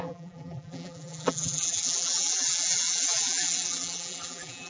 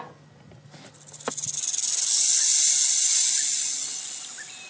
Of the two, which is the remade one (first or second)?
first